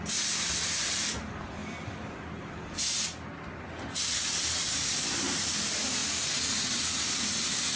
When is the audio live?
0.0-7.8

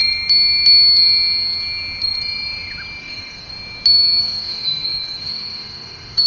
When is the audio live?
0.0-3.0; 3.5-4.2

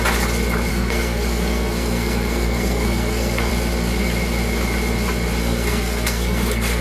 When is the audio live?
0.0-0.7; 3.5-5.4

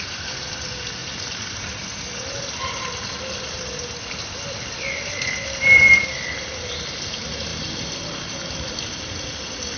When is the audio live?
0.0-9.8

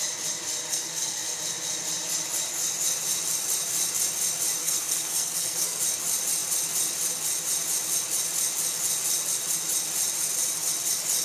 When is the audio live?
0.0-0.7; 1.4-4.6; 5.8-11.2